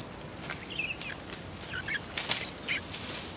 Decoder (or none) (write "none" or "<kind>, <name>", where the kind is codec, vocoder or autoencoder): none